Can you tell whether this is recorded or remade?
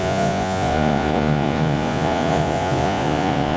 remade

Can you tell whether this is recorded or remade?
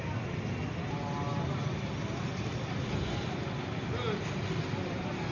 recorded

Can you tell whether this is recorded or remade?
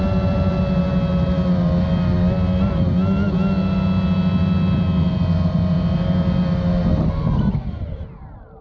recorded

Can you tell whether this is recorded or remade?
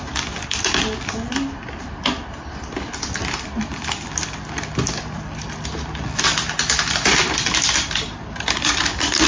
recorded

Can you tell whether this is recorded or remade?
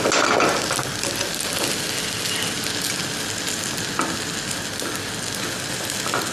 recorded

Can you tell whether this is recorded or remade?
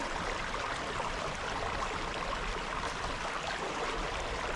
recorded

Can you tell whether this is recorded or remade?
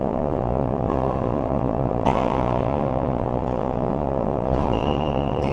remade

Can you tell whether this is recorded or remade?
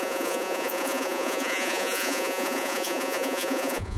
remade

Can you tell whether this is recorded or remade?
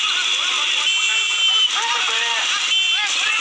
recorded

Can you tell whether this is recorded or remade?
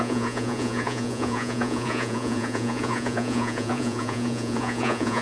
remade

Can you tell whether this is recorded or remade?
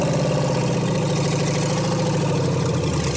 recorded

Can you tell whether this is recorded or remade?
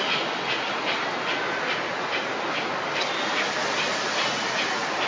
recorded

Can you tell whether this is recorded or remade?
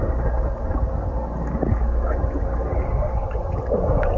recorded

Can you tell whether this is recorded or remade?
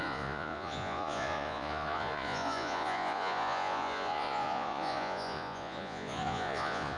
remade